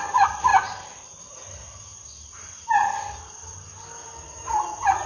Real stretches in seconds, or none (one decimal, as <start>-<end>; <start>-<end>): 0.0-0.5; 1.3-5.1